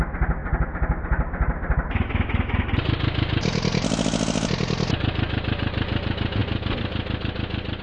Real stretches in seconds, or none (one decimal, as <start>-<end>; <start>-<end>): 0.0-7.8